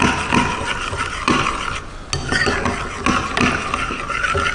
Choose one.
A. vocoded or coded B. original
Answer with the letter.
B